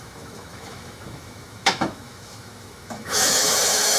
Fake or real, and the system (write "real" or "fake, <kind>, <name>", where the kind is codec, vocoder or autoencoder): fake, autoencoder, DAC-VAE